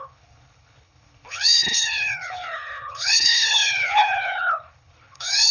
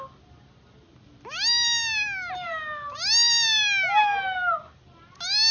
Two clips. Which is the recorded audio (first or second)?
second